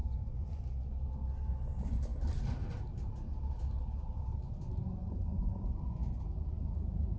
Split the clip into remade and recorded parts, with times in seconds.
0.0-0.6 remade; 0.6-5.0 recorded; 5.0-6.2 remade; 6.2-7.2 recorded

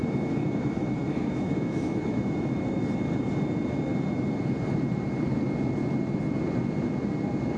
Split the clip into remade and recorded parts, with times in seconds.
0.0-2.8 remade; 2.8-7.6 recorded

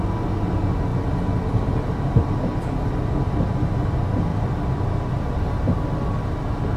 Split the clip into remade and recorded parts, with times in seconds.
0.0-4.3 recorded; 4.3-5.1 remade; 5.1-6.8 recorded

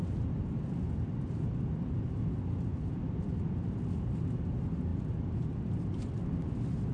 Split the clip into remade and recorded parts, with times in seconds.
0.0-6.9 recorded

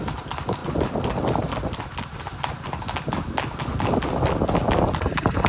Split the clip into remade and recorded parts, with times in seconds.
0.0-5.5 recorded

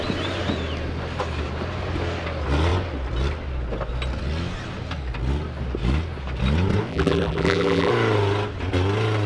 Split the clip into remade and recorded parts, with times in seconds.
0.0-6.9 recorded; 6.9-7.9 remade; 7.9-9.3 recorded